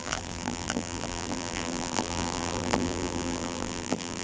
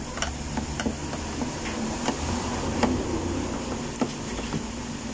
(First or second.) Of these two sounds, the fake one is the first